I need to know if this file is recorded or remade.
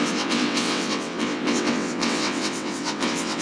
remade